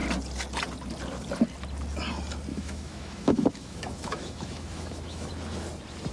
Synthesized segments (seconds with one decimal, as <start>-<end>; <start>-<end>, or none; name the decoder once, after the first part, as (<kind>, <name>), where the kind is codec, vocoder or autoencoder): 2.5-5.3 (autoencoder, DAC-VAE)